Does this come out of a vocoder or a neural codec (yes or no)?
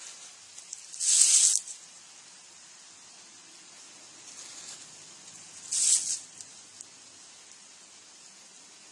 no